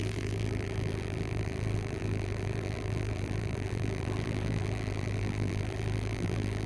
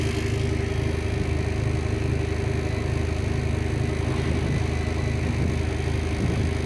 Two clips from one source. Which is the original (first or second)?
second